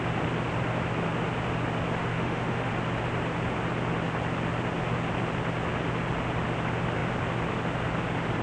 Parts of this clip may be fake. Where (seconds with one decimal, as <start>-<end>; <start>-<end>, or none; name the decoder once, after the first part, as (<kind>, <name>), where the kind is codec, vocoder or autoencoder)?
2.0-2.7 (autoencoder, DAC-VAE)